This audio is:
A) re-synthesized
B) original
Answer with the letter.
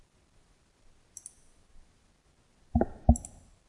B